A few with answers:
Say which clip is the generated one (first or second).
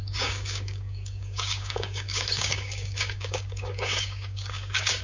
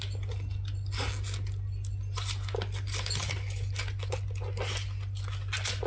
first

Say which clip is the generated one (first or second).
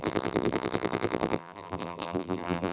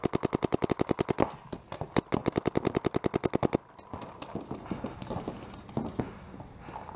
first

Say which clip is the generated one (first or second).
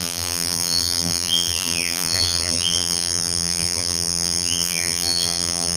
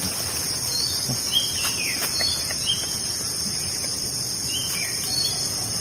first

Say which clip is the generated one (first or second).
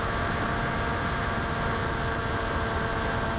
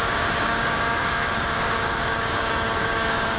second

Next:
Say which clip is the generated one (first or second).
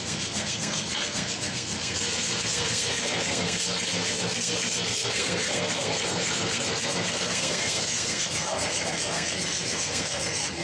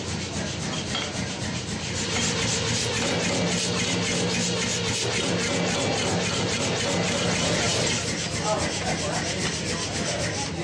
first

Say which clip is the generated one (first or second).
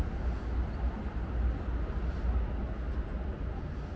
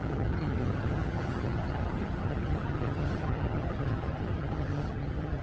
second